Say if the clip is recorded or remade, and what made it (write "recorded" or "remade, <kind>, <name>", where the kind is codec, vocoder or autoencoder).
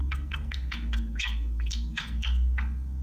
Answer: remade, codec, SNAC